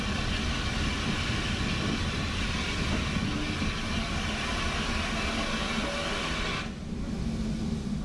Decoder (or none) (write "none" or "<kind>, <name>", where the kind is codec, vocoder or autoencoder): none